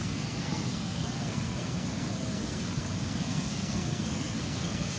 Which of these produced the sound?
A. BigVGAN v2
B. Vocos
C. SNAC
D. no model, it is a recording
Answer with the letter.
C